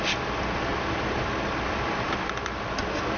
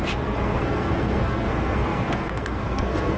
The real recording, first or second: first